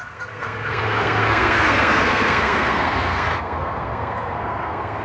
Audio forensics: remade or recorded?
remade